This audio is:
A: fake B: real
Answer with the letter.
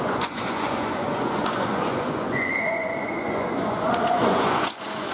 A